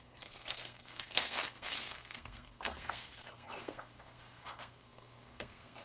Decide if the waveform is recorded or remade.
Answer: remade